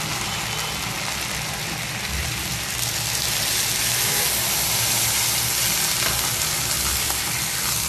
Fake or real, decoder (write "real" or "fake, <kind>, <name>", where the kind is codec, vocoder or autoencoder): real